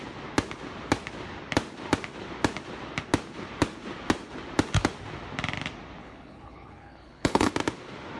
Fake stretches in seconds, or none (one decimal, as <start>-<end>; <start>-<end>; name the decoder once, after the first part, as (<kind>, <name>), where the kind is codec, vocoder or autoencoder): 6.0-7.5 (codec, HILCodec)